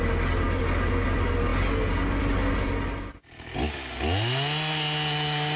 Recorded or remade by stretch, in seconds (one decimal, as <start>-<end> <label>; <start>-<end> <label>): 0.0-5.6 recorded